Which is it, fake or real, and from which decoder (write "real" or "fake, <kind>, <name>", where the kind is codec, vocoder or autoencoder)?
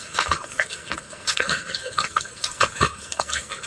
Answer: fake, codec, SNAC